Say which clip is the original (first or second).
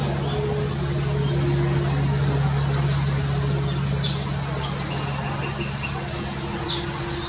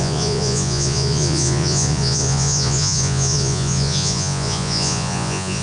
first